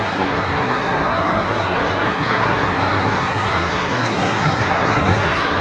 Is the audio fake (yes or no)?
yes